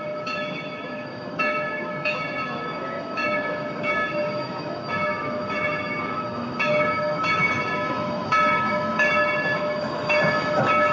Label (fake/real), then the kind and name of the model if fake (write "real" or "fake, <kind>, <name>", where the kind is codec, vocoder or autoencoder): fake, autoencoder, DAC-VAE